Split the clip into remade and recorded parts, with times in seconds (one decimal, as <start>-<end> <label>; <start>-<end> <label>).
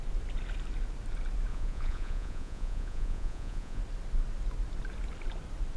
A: 0.0-1.5 recorded; 1.5-3.8 remade; 3.8-5.8 recorded